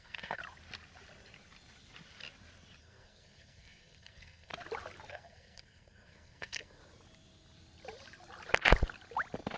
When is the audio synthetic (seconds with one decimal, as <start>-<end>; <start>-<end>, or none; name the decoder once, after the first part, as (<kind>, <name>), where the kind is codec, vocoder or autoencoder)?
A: 0.0-0.4 (codec, SNAC); 2.8-4.5; 5.1-6.8

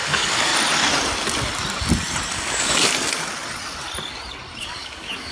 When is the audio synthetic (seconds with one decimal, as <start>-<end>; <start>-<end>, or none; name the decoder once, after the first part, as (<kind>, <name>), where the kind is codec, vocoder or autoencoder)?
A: 0.0-0.5 (codec, DAC); 2.3-2.9; 4.6-5.3

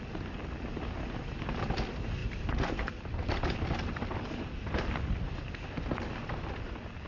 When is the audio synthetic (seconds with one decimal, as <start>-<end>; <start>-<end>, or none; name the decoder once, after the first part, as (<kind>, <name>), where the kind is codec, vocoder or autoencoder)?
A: none

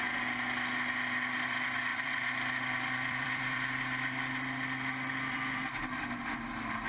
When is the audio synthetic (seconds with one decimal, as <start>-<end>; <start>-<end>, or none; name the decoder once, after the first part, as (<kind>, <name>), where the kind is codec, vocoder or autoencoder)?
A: 1.9-5.6 (vocoder, BigVGAN v2)

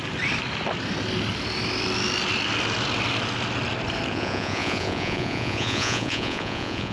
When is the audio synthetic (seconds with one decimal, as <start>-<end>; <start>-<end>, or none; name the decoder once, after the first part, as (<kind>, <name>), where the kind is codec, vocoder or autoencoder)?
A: 4.1-6.9 (vocoder, Vocos)